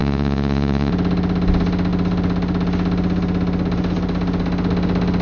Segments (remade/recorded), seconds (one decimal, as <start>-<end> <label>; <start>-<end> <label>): 0.0-0.9 remade; 0.9-5.2 recorded